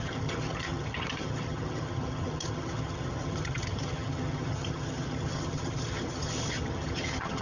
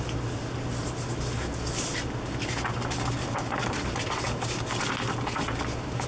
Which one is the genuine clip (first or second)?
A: second